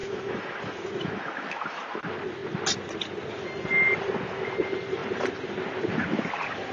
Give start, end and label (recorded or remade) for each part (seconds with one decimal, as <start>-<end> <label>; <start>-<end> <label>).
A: 0.0-2.0 remade; 2.0-6.7 recorded